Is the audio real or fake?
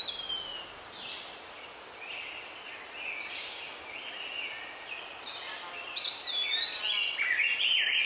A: real